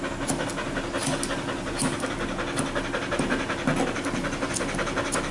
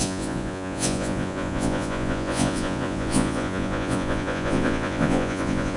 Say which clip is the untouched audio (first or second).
first